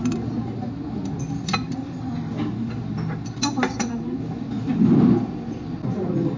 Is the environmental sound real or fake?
real